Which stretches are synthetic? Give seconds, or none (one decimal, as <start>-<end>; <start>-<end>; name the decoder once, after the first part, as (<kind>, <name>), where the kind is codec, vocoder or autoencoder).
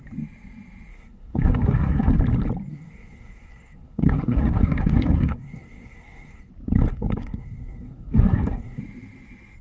0.9-2.2 (codec, SNAC); 2.7-6.5; 6.9-8.8